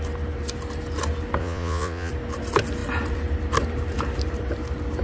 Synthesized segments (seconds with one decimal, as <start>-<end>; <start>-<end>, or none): 1.4-2.1